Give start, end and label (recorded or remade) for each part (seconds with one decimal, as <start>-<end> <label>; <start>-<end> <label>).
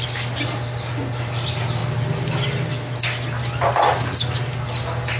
0.0-5.2 recorded